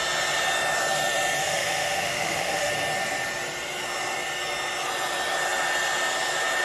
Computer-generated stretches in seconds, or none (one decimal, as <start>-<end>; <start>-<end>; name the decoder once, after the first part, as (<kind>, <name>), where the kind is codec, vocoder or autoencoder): 1.4-2.7 (autoencoder, DAC-VAE)